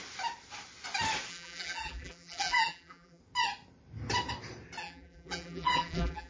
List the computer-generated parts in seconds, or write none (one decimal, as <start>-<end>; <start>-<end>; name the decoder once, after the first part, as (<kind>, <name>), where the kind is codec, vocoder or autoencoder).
1.3-3.2 (vocoder, BigVGAN v2); 4.8-6.3